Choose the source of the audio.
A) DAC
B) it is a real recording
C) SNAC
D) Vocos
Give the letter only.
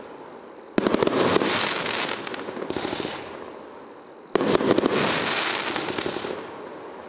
B